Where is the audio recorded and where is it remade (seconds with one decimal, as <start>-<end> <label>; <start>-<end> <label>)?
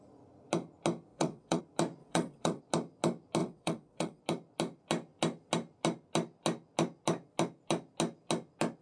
0.0-1.1 recorded; 1.1-1.6 remade; 1.6-2.0 recorded; 2.0-2.6 remade; 2.6-3.4 recorded; 3.4-4.2 remade; 4.2-8.8 recorded